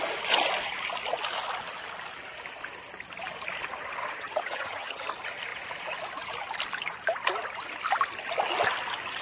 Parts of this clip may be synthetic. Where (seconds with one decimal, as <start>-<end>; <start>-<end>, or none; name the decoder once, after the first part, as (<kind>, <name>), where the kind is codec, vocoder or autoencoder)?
4.0-5.0 (vocoder, HiFi-GAN)